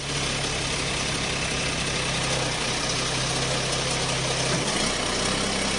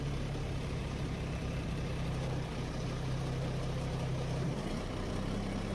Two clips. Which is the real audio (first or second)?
first